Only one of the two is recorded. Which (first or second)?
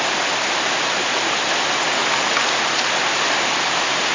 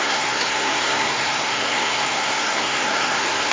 first